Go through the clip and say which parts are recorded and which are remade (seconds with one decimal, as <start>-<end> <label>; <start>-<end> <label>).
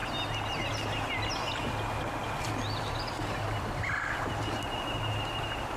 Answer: 0.0-2.2 recorded; 2.2-4.3 remade; 4.3-5.8 recorded